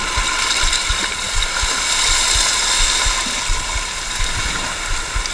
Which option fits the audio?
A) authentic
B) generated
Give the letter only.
A